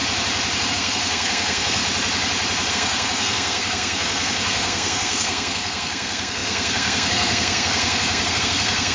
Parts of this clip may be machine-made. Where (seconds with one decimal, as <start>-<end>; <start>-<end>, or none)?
0.7-1.8; 2.7-8.9